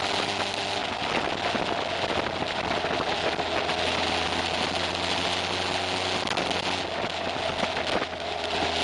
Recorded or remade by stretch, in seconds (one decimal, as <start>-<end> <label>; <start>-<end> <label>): 0.0-8.8 recorded